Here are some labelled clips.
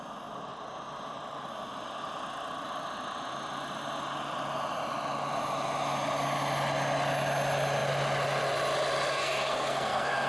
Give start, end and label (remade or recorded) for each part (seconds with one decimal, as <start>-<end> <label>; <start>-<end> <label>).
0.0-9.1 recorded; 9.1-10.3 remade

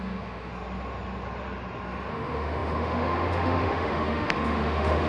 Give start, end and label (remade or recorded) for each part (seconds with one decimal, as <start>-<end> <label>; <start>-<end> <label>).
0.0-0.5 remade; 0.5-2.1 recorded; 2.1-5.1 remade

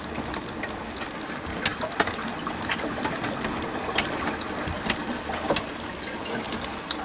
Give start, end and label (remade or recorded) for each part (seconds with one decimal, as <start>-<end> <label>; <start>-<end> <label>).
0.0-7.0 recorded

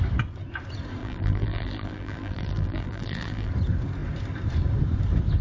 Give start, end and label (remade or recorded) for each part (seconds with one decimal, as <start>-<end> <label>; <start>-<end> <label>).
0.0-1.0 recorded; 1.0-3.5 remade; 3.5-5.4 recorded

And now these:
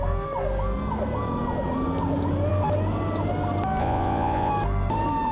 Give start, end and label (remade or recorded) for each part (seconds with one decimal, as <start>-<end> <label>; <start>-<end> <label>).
0.0-3.8 recorded; 3.8-4.5 remade; 4.5-5.3 recorded

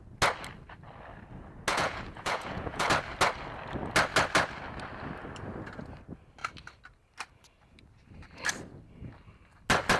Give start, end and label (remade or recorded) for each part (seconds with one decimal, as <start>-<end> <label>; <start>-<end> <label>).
0.0-1.7 recorded; 1.7-2.9 remade; 2.9-10.0 recorded